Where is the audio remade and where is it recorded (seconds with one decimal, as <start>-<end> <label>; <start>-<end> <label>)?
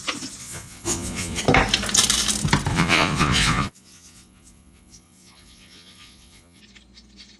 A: 0.0-0.4 recorded; 0.4-1.4 remade; 1.4-2.7 recorded; 2.7-6.6 remade; 6.6-7.4 recorded